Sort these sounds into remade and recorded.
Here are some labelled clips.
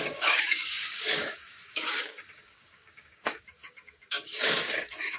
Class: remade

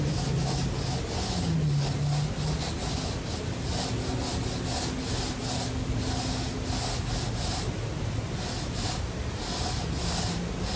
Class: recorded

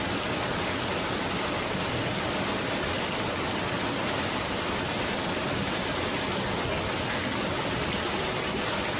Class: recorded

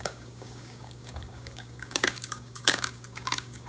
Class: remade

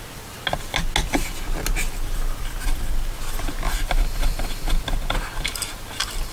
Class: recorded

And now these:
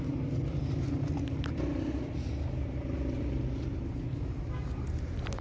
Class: recorded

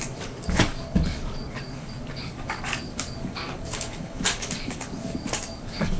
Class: remade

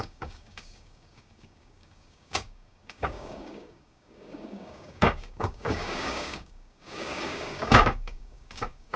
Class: remade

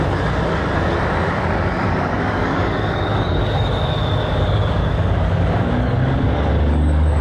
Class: remade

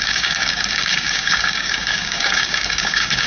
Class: remade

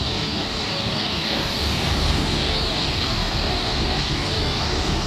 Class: remade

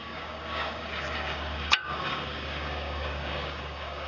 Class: remade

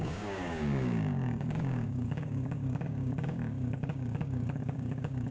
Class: remade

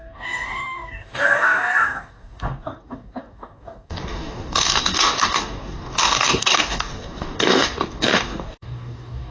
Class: remade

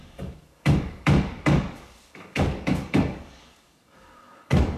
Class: remade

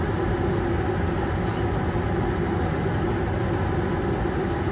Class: recorded